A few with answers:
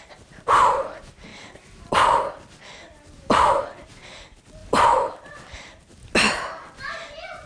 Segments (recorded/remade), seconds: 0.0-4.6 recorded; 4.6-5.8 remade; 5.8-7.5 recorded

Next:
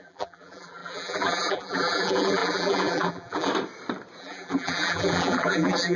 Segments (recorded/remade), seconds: 0.0-3.5 remade; 3.5-4.2 recorded; 4.2-6.0 remade

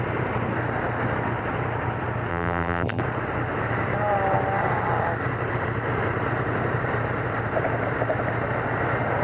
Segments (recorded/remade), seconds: 0.0-2.3 recorded; 2.3-3.0 remade; 3.0-9.2 recorded

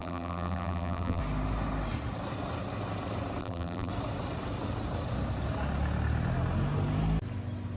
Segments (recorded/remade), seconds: 0.0-1.2 remade; 1.2-3.4 recorded; 3.4-3.9 remade; 3.9-7.8 recorded

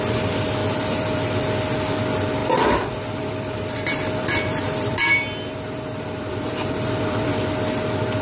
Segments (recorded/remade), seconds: 0.0-0.6 recorded; 0.6-1.4 remade; 1.4-2.4 recorded; 2.4-7.3 remade; 7.3-8.2 recorded